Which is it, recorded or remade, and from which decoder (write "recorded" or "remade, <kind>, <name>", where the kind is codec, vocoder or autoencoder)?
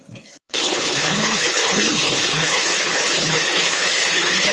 remade, codec, HILCodec